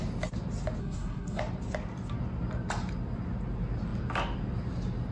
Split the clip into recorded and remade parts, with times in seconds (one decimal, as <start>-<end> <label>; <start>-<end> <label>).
0.0-0.8 recorded; 0.8-1.4 remade; 1.4-5.1 recorded

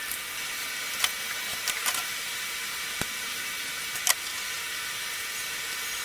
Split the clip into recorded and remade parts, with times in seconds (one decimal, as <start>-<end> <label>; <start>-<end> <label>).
0.0-1.5 recorded; 1.5-3.6 remade; 3.6-6.0 recorded

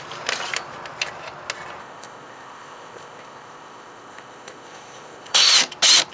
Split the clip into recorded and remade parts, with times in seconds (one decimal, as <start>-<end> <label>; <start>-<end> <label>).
0.0-1.8 recorded; 1.8-5.5 remade; 5.5-6.1 recorded

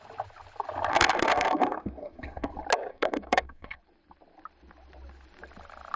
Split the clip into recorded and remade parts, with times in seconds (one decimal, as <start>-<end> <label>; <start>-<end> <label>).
0.0-0.9 recorded; 0.9-2.5 remade; 2.5-2.9 recorded; 2.9-3.8 remade; 3.8-6.0 recorded

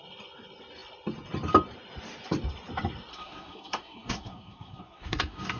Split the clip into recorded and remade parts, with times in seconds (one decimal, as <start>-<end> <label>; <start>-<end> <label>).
0.0-3.1 recorded; 3.1-5.6 remade